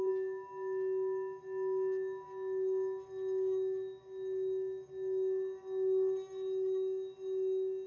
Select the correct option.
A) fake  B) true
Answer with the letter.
B